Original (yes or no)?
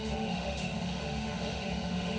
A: no